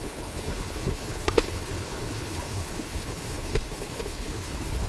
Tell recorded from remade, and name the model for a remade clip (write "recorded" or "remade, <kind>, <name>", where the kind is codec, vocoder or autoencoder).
remade, codec, HILCodec